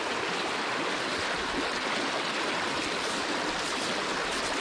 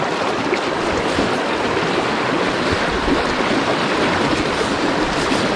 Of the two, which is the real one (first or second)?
first